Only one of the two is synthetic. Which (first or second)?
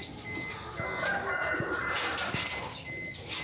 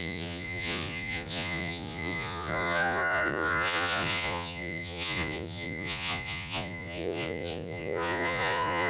second